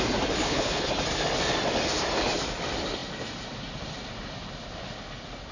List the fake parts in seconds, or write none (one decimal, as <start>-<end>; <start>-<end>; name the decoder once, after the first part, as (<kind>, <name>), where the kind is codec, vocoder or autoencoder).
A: 0.4-0.9 (codec, HILCodec)